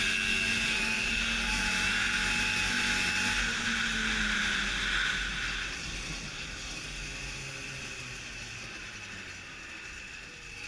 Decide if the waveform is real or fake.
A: real